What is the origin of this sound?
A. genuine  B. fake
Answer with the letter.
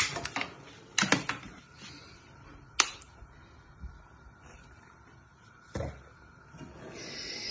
A